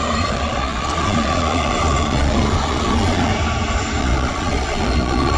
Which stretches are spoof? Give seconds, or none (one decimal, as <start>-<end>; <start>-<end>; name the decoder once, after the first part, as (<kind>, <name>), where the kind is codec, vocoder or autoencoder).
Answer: 0.0-3.3 (vocoder, Vocos); 4.0-5.4